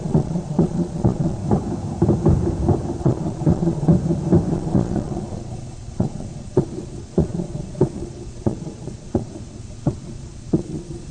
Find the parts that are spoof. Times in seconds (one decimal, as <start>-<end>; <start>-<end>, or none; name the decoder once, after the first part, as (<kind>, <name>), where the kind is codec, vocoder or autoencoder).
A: 0.0-1.4 (vocoder, Vocos); 3.0-3.9; 4.5-11.1